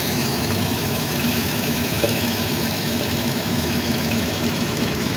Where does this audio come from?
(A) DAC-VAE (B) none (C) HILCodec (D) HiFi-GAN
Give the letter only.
A